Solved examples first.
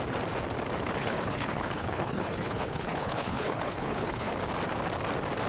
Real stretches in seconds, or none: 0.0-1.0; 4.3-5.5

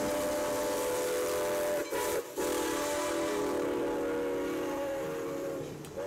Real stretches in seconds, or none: 0.0-1.8; 3.8-6.1

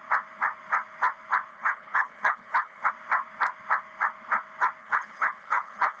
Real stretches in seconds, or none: 0.0-1.5; 2.9-4.8

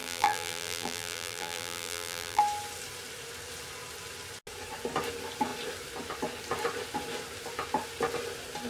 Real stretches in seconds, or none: 2.4-8.7

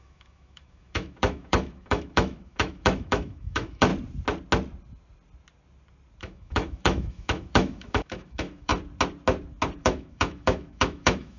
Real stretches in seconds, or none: 3.9-6.2; 8.7-9.8

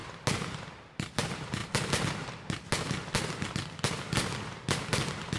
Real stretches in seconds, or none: 0.0-5.4

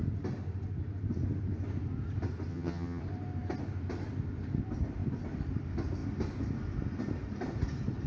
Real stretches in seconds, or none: 0.0-2.5; 3.0-8.1

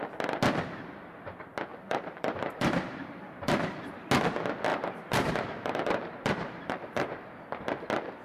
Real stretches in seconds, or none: 0.0-1.7; 3.7-4.7; 7.4-8.2